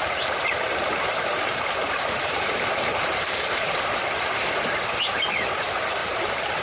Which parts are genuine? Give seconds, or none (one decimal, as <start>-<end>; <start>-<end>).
4.0-6.0